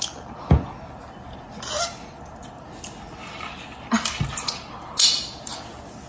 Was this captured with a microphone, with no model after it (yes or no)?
yes